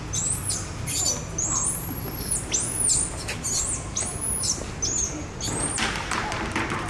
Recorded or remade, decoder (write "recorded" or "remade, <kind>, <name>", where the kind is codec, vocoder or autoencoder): recorded